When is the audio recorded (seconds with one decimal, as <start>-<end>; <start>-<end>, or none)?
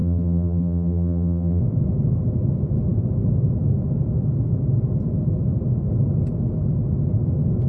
1.6-7.7